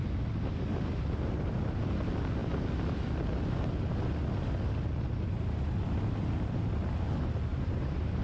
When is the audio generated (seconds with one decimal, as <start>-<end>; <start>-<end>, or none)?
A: 7.5-8.2